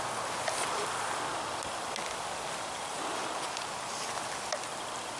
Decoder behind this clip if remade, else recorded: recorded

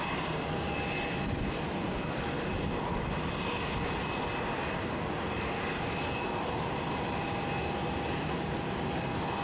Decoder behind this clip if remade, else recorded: recorded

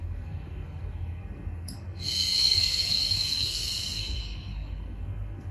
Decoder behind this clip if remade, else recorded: remade, codec, SNAC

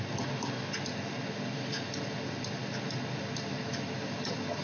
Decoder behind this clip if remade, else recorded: recorded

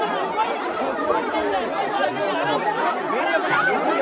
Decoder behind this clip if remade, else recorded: recorded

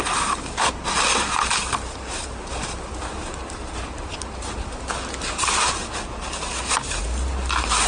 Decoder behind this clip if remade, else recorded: recorded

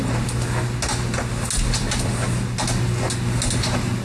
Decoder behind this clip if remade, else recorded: recorded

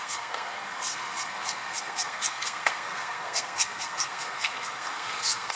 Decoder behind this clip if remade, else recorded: remade, codec, SNAC